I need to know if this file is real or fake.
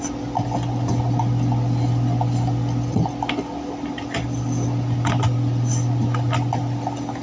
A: real